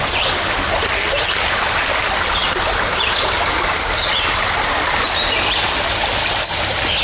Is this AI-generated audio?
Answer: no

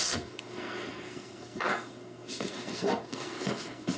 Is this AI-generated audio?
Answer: yes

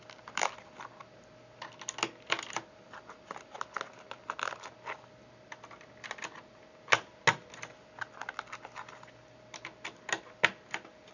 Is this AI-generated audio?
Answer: no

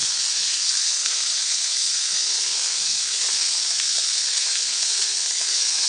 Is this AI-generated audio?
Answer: yes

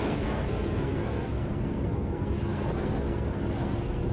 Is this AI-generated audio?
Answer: yes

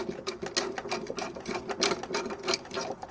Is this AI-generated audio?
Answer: no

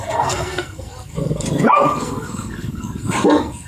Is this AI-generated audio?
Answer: yes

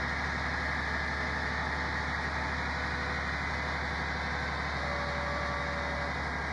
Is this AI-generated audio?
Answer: no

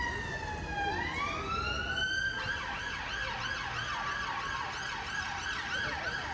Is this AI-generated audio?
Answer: no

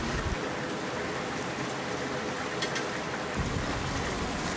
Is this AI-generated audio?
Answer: no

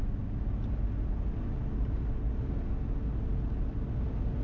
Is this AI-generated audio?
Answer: no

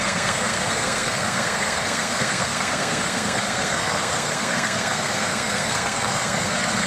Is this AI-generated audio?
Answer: yes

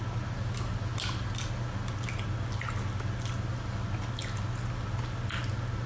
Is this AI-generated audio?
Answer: no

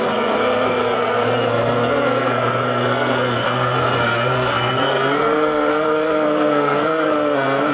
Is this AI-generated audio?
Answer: yes